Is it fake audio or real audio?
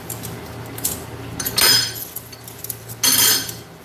real